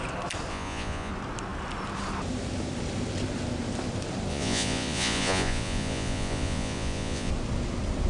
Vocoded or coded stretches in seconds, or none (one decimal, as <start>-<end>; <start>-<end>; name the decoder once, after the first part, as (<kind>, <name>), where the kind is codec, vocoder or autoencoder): 0.5-1.1 (vocoder, Vocos); 4.3-7.3